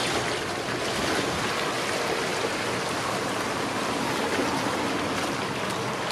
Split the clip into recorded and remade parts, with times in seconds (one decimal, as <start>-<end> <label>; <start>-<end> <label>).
0.0-6.1 recorded